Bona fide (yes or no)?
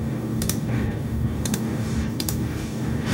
no